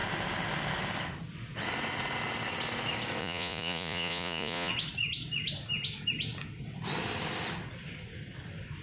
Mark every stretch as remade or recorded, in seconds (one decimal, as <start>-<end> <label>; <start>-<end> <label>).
0.0-3.2 recorded; 3.2-4.7 remade; 4.7-8.8 recorded